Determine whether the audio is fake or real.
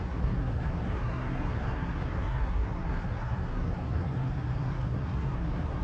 fake